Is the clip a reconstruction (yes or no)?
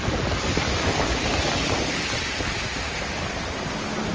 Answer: no